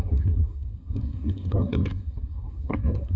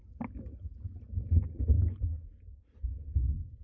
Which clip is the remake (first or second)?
first